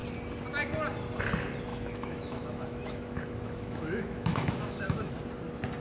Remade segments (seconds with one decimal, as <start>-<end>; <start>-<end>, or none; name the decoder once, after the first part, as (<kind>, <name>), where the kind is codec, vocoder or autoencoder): 1.7-5.2 (autoencoder, DAC-VAE)